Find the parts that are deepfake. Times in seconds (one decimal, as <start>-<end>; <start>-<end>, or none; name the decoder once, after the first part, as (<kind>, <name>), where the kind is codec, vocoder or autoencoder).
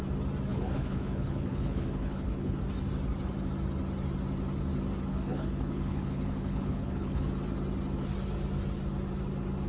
0.5-2.6 (codec, HILCodec); 5.1-7.3